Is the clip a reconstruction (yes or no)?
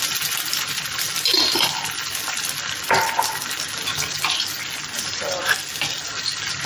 no